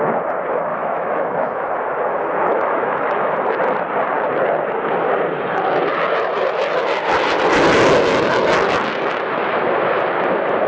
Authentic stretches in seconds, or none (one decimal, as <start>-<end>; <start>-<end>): 0.0-0.7; 1.7-2.5; 3.6-10.7